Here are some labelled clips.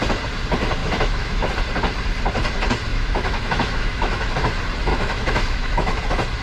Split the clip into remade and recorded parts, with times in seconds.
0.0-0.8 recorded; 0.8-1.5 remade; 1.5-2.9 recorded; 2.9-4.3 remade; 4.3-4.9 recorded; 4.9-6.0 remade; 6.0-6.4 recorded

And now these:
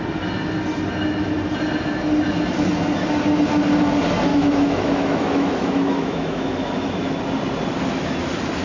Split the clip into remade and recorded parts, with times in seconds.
0.0-4.3 recorded; 4.3-7.2 remade; 7.2-8.6 recorded